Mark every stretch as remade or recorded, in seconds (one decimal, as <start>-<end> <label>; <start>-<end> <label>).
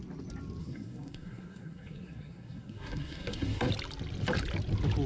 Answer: 0.0-0.6 recorded; 0.6-3.7 remade; 3.7-5.1 recorded